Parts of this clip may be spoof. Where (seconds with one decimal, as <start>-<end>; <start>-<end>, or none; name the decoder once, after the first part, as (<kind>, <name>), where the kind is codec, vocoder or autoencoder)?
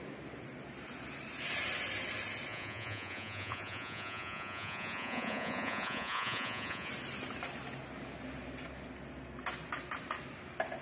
2.5-6.9 (vocoder, Vocos)